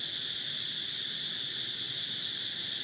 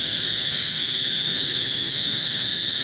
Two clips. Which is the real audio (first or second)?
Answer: first